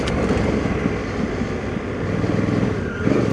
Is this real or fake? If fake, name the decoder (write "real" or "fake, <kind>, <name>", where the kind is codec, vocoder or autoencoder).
real